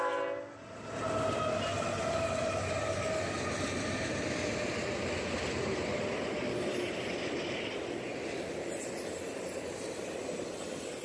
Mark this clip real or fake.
real